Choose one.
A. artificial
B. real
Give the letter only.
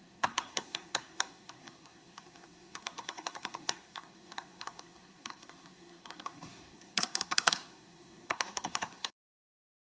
A